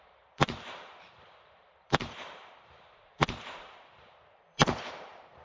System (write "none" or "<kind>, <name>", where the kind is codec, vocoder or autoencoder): vocoder, BigVGAN v2